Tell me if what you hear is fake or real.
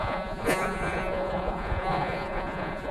fake